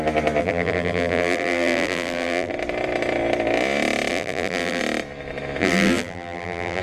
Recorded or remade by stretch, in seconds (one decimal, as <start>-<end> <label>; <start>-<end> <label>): 0.0-0.4 recorded; 0.4-2.5 remade; 2.5-4.1 recorded; 4.1-4.8 remade; 4.8-5.6 recorded; 5.6-6.8 remade